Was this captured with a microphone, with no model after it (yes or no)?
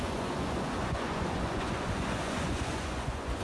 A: no